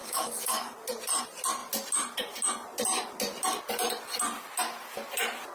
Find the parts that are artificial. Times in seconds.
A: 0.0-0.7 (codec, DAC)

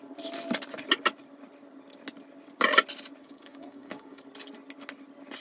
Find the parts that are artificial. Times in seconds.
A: 3.2-4.2 (codec, DAC)

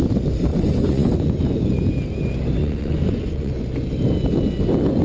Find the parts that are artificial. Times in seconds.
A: 0.5-1.7 (vocoder, Vocos); 2.6-3.5